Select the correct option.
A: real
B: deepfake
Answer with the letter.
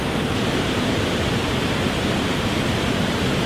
A